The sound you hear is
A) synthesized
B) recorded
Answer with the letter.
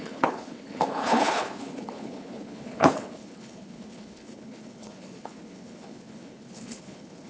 A